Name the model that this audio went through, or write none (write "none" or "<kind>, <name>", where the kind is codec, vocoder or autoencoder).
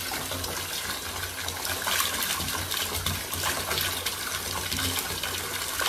none